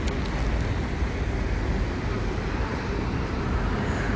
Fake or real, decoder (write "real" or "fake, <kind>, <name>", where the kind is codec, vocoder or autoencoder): real